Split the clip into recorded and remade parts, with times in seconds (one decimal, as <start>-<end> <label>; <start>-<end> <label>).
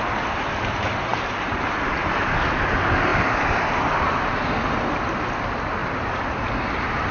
0.0-1.1 recorded; 1.1-2.2 remade; 2.2-5.8 recorded; 5.8-6.3 remade; 6.3-7.1 recorded